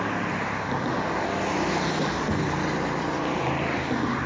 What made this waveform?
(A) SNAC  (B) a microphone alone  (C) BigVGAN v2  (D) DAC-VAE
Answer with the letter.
B